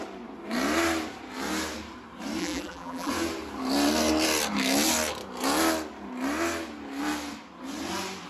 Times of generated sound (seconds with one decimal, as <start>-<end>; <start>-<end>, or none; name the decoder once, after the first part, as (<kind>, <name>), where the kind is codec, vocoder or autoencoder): 2.4-3.1 (vocoder, BigVGAN v2)